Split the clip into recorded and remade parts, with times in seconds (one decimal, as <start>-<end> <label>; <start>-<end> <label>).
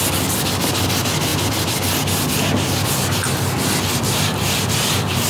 0.0-5.3 recorded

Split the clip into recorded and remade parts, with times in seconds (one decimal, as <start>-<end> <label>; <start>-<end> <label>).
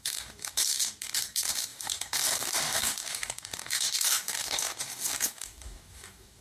0.0-6.4 remade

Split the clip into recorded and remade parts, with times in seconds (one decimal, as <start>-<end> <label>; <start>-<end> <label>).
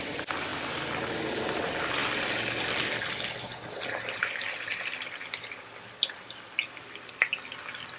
0.0-8.0 recorded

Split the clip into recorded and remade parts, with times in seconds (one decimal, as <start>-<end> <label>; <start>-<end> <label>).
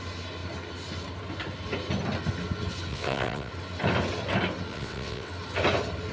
0.0-2.9 recorded; 2.9-3.5 remade; 3.5-4.7 recorded; 4.7-5.3 remade; 5.3-6.1 recorded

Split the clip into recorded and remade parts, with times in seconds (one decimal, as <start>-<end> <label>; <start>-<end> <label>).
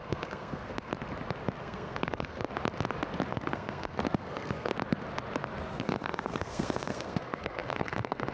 0.0-0.9 remade; 0.9-1.6 recorded; 1.6-2.5 remade; 2.5-3.3 recorded; 3.3-4.7 remade; 4.7-5.7 recorded; 5.7-8.3 remade